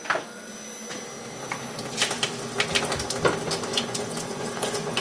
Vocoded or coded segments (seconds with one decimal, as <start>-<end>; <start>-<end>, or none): 3.7-5.0